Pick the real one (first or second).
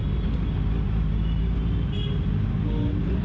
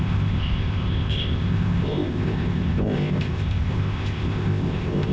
first